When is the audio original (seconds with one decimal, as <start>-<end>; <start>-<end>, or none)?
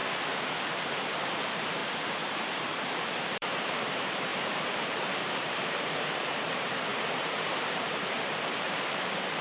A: 0.0-0.9